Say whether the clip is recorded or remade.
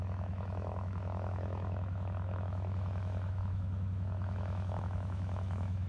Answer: remade